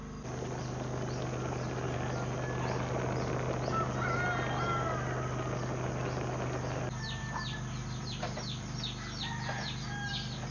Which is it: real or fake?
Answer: real